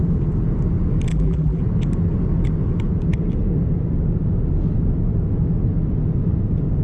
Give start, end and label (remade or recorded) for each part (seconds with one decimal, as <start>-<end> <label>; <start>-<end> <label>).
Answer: 0.0-1.1 recorded; 1.1-1.6 remade; 1.6-6.8 recorded